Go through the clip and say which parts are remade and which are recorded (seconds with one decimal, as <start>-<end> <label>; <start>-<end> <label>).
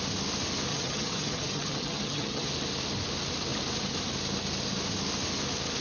0.0-0.7 recorded; 0.7-2.5 remade; 2.5-5.8 recorded